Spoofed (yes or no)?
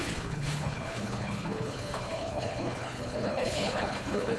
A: yes